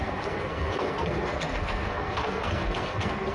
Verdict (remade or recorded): remade